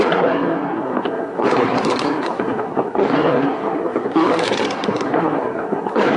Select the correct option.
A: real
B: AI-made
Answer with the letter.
B